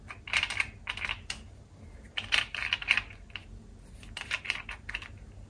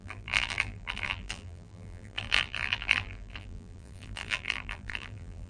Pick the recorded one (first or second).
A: first